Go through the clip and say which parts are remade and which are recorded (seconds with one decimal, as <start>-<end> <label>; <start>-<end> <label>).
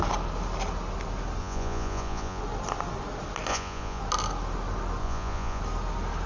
0.0-1.4 recorded; 1.4-2.4 remade; 2.4-3.5 recorded; 3.5-4.0 remade; 4.0-5.0 recorded; 5.0-5.6 remade; 5.6-6.3 recorded